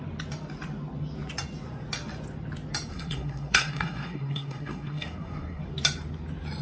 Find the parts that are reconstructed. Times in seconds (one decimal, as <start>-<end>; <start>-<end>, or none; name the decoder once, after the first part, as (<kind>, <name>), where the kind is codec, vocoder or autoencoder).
2.9-5.6 (codec, SNAC)